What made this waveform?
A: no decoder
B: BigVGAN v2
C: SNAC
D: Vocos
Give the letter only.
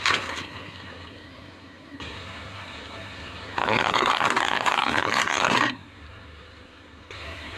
C